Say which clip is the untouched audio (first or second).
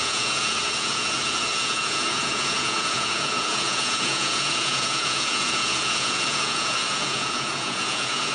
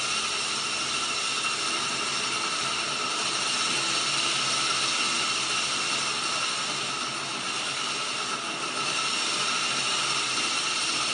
second